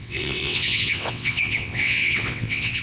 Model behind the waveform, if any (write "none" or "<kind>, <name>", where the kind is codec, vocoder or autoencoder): vocoder, WaveNeXt